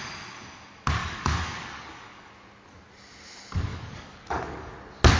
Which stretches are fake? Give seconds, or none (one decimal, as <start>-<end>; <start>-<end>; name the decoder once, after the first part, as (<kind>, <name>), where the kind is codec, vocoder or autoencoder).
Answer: 1.0-2.3 (codec, DAC); 3.7-4.7